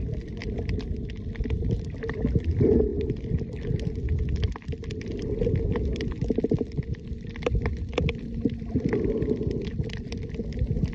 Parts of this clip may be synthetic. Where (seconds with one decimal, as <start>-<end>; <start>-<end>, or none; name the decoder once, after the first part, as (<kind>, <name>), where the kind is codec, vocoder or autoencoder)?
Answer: 0.0-2.9 (vocoder, BigVGAN v2); 6.4-10.9

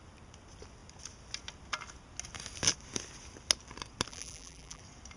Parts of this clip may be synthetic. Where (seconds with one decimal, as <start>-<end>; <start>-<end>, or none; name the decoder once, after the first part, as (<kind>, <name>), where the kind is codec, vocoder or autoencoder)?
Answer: 4.1-4.8 (vocoder, BigVGAN v2)

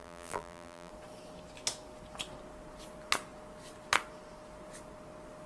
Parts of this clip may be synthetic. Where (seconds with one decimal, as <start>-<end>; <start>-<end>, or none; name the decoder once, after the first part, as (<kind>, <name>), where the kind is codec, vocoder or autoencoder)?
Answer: 0.0-0.9 (vocoder, BigVGAN v2)

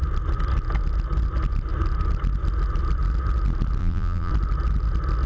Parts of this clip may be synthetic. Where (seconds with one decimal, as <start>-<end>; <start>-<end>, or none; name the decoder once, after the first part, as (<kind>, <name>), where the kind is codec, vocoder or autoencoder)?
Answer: 3.8-4.3 (vocoder, BigVGAN v2)

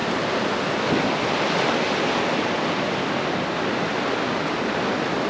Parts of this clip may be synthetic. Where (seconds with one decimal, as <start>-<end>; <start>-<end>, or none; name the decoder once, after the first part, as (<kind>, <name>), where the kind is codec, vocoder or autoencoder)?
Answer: none